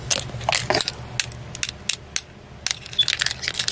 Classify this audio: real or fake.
real